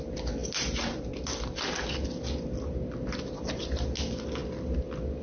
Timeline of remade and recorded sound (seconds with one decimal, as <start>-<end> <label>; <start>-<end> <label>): 0.0-5.2 recorded